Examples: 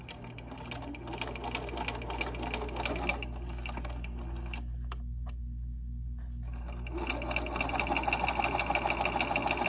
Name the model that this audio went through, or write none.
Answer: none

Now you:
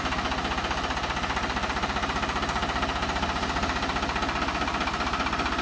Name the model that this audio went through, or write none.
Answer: none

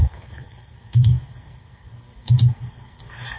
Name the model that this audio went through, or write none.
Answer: codec, SNAC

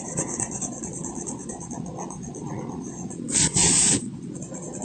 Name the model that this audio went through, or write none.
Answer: vocoder, Vocos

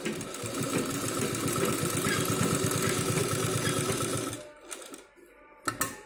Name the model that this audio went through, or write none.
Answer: none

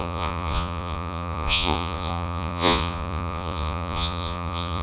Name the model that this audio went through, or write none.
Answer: vocoder, Vocos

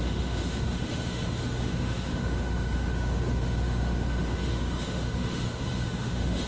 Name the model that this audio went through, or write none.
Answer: autoencoder, DAC-VAE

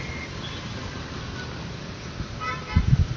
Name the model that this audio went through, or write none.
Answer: none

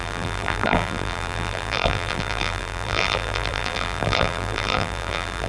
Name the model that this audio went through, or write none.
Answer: vocoder, BigVGAN v2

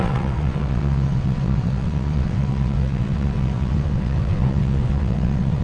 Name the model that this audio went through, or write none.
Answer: vocoder, WaveNeXt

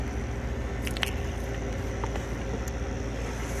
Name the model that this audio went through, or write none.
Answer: none